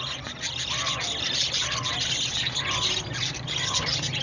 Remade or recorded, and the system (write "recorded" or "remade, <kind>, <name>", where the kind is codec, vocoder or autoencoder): recorded